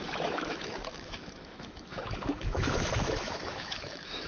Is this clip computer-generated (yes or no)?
yes